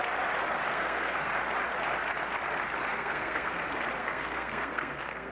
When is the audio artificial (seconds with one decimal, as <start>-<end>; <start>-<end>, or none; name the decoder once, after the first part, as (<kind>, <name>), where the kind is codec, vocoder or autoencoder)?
0.7-1.3 (codec, SNAC); 2.9-3.6; 4.0-5.3

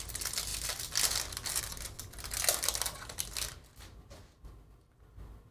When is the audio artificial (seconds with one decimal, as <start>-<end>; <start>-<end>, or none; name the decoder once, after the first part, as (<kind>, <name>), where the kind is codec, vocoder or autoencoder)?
none

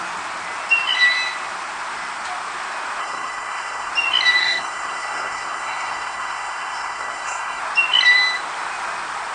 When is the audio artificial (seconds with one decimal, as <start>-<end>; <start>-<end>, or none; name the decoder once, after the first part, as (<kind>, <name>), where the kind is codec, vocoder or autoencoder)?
3.0-3.9 (codec, SNAC); 4.4-7.6

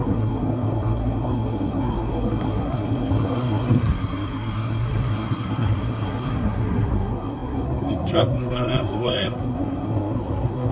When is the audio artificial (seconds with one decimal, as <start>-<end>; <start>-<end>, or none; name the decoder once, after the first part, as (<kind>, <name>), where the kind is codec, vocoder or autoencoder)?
0.0-10.7 (codec, SNAC)

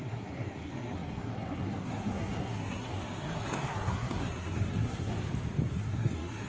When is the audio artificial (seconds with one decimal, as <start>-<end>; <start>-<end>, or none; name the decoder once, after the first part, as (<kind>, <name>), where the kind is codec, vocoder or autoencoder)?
0.0-5.1 (codec, SNAC); 5.7-6.5

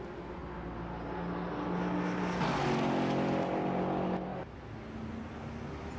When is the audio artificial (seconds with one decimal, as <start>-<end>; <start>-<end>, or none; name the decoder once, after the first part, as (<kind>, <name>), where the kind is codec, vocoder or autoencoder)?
none